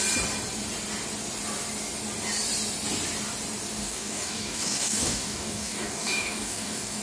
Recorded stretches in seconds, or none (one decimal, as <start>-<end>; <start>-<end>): 0.0-3.8